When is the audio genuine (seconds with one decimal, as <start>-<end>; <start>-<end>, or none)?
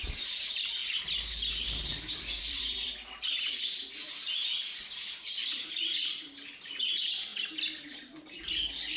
0.8-2.4; 7.3-9.0